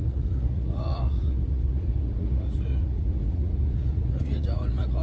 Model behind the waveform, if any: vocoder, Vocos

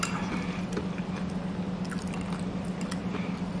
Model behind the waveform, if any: none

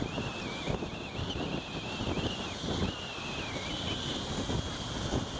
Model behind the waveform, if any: none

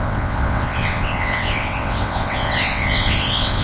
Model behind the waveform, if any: vocoder, WaveNeXt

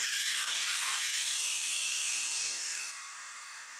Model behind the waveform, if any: codec, DAC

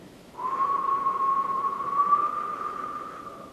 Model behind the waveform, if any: vocoder, BigVGAN v2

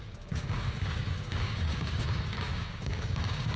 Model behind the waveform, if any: codec, DAC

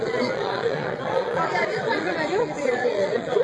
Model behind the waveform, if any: vocoder, Vocos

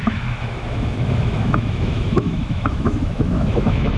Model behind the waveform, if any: autoencoder, DAC-VAE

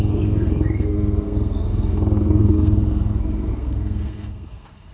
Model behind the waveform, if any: codec, SNAC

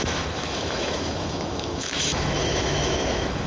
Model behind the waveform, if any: autoencoder, DAC-VAE